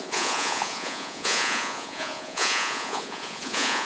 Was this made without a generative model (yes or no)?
no